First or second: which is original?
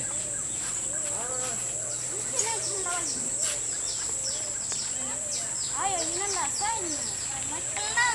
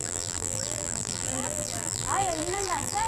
first